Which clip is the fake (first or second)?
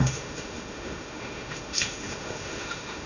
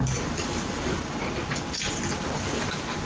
first